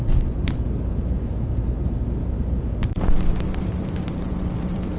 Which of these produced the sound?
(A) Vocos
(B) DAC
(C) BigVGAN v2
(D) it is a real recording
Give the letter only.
C